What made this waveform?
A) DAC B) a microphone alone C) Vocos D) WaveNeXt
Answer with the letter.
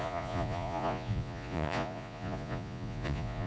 C